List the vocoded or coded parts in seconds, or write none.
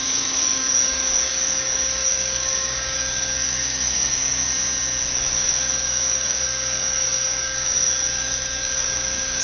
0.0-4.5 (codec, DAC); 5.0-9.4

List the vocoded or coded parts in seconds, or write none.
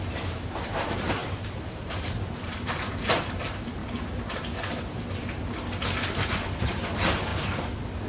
0.0-3.8 (vocoder, BigVGAN v2); 6.6-7.3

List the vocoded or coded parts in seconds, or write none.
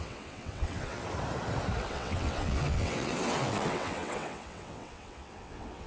0.0-1.0 (vocoder, WaveNeXt); 1.9-5.9